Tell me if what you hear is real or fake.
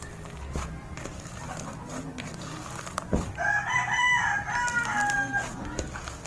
real